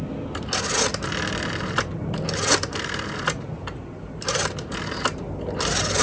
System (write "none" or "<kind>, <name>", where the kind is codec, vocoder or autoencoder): none